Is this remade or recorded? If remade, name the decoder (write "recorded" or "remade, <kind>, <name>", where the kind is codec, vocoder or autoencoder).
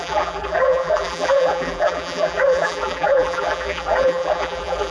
remade, vocoder, BigVGAN v2